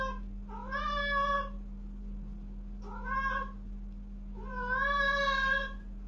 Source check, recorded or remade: recorded